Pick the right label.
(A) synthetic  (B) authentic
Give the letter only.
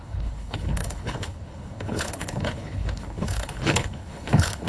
A